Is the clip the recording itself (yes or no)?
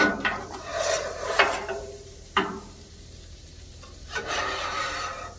no